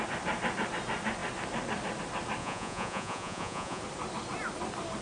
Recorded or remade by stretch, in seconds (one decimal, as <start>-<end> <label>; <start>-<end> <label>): 0.0-2.4 recorded; 2.4-3.8 remade; 3.8-5.0 recorded